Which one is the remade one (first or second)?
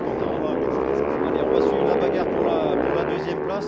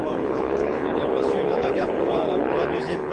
second